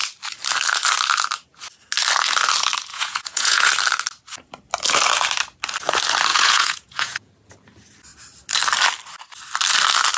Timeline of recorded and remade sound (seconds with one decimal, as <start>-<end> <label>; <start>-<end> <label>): 0.0-2.9 recorded; 2.9-3.7 remade; 3.7-6.3 recorded; 6.3-7.3 remade; 7.3-10.2 recorded